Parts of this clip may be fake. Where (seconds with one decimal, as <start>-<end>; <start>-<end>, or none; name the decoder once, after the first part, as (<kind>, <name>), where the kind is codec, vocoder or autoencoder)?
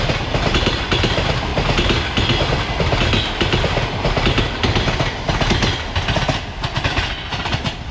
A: none